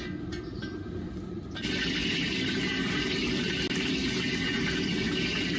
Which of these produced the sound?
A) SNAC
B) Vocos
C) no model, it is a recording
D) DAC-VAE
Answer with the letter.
C